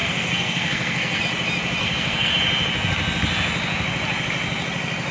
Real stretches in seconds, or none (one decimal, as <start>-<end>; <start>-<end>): 1.2-1.8; 2.3-5.1